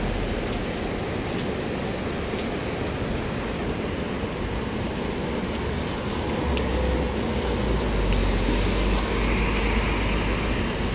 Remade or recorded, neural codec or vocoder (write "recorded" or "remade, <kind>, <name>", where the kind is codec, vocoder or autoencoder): recorded